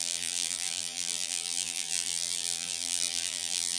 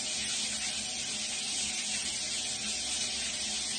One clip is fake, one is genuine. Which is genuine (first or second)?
second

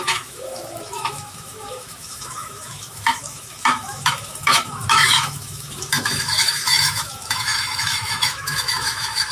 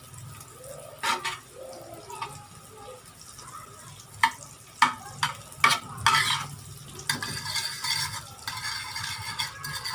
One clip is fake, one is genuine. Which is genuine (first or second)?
second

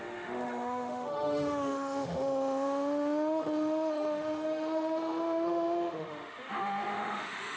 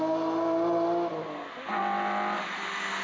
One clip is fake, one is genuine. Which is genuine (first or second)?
second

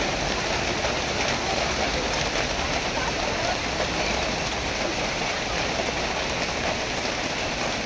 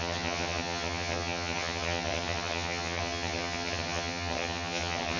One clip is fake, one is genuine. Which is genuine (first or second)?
first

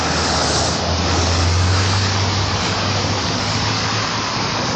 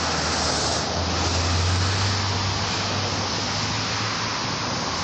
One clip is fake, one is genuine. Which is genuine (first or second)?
second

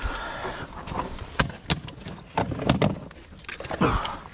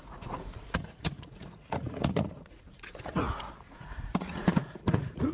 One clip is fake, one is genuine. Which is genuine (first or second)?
first